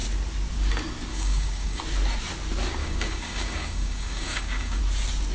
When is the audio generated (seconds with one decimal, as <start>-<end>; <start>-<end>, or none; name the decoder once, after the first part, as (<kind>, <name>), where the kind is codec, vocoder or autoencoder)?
1.1-1.8 (codec, DAC); 2.8-4.8